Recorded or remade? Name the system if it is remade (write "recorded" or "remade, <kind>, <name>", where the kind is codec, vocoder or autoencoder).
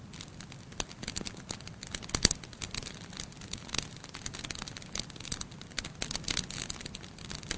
recorded